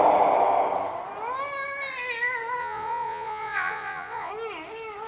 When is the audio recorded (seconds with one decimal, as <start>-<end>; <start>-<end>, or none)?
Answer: 0.0-2.6; 4.3-5.1